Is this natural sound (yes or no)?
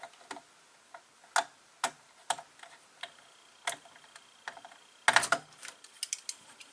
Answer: yes